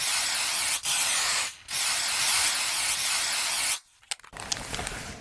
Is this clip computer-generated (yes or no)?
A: no